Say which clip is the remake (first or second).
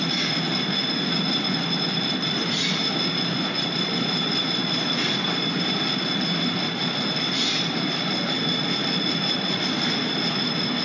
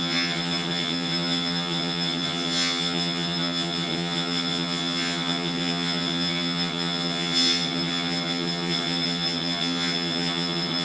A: second